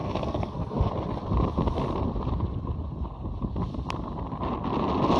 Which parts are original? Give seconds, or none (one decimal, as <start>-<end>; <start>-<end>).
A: 0.9-5.2